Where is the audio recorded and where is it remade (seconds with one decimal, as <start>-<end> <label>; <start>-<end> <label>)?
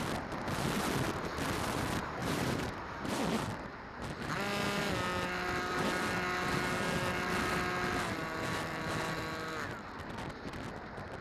0.0-2.2 recorded; 2.2-3.1 remade; 3.1-11.2 recorded